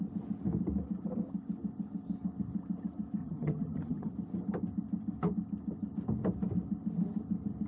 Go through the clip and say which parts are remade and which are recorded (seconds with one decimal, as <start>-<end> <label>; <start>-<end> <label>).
0.0-3.2 recorded; 3.2-4.1 remade; 4.1-7.7 recorded